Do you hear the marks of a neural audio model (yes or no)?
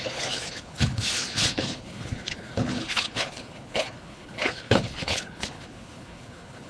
yes